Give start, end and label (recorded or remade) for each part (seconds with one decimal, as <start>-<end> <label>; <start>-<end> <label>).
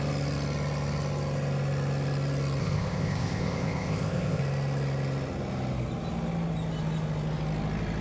0.0-2.6 recorded; 2.6-4.4 remade; 4.4-8.0 recorded